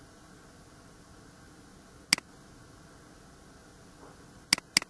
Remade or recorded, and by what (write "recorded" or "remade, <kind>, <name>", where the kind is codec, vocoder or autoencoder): recorded